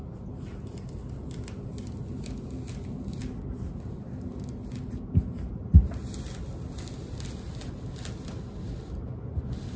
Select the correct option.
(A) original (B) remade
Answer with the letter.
A